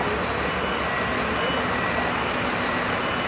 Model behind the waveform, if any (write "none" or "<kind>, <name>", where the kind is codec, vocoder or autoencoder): none